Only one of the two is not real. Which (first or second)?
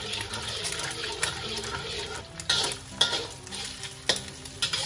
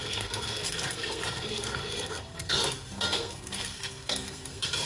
second